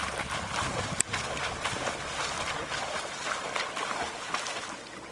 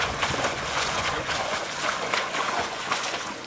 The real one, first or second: first